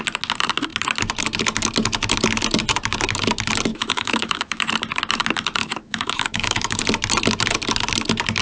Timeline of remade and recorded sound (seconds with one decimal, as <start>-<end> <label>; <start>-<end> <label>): 0.0-3.7 recorded; 3.7-4.7 remade; 4.7-5.6 recorded; 5.6-6.8 remade; 6.8-8.4 recorded